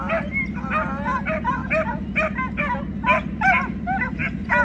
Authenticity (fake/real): real